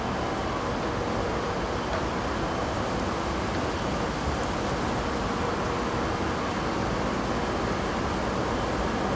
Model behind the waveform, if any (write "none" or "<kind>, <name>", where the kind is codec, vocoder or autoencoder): none